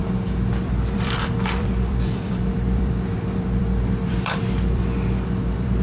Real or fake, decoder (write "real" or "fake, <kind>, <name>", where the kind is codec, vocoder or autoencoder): fake, vocoder, BigVGAN v2